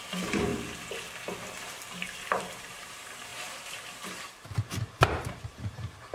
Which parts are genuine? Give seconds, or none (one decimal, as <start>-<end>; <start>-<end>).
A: 0.5-1.6